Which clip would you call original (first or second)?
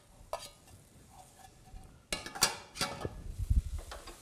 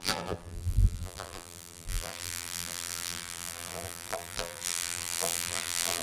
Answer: first